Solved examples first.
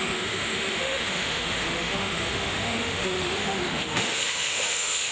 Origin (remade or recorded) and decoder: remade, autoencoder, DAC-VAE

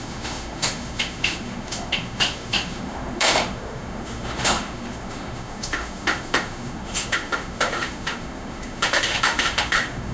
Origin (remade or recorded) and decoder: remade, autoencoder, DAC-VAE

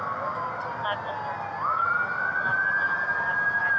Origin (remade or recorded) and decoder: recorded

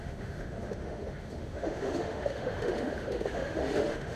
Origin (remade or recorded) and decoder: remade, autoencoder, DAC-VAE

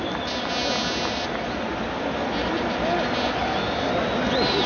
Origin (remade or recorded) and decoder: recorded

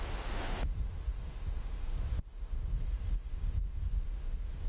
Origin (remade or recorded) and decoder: remade, autoencoder, DAC-VAE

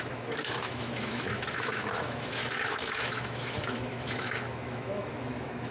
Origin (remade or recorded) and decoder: remade, autoencoder, DAC-VAE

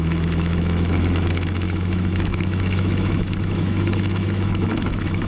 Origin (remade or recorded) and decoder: remade, autoencoder, DAC-VAE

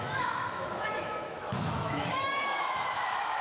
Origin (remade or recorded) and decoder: remade, autoencoder, DAC-VAE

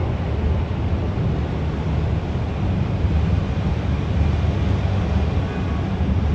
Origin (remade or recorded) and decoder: recorded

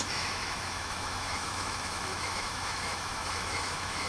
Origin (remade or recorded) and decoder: remade, autoencoder, DAC-VAE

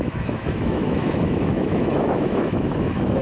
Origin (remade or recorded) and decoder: remade, autoencoder, DAC-VAE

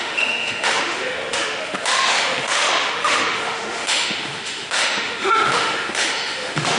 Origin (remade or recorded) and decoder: remade, autoencoder, DAC-VAE